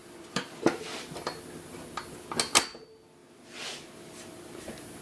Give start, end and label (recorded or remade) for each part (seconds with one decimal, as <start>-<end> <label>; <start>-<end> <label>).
0.0-5.0 recorded